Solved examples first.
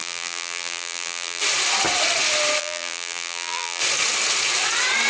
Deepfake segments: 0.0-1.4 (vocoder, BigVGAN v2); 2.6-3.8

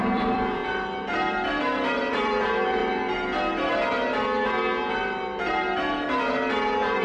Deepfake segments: 0.0-0.6 (vocoder, BigVGAN v2); 2.1-2.8

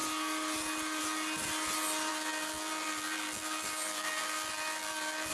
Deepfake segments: 2.1-5.3 (vocoder, BigVGAN v2)

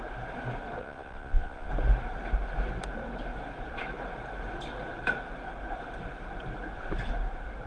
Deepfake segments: 0.8-1.7 (vocoder, Vocos)

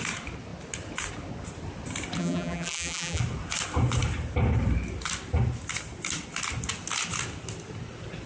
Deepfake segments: 2.2-3.2 (vocoder, BigVGAN v2)

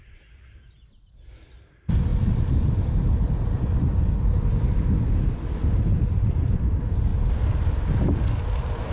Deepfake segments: none

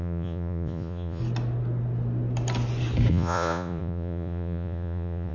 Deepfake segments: 0.0-1.2 (vocoder, Vocos); 3.1-5.3